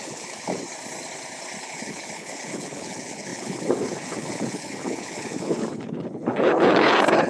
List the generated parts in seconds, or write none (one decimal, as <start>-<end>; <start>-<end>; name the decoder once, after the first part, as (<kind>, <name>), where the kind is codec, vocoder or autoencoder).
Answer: 0.0-0.5 (codec, HILCodec); 1.6-7.3